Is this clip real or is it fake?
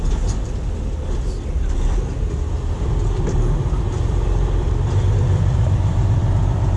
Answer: fake